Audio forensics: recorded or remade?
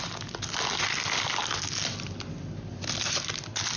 recorded